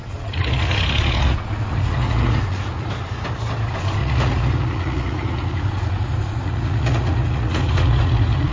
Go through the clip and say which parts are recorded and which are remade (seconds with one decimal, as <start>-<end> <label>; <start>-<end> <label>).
0.0-2.9 remade; 2.9-4.0 recorded; 4.0-8.5 remade